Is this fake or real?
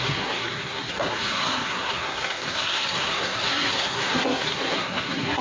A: fake